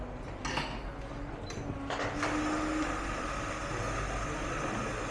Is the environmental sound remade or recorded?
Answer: recorded